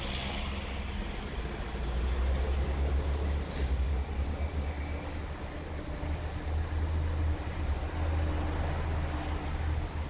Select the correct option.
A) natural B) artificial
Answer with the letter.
A